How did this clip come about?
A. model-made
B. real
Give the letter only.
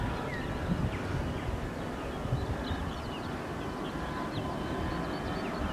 B